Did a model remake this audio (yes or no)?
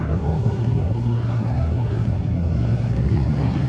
yes